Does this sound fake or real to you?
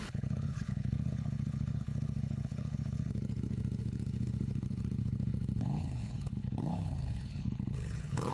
fake